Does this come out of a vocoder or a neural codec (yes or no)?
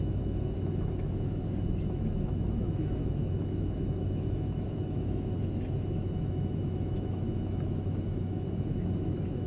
yes